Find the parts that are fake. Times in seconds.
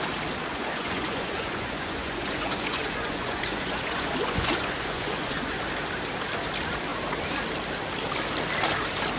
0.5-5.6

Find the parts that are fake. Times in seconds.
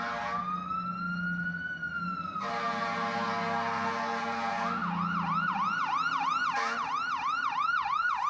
none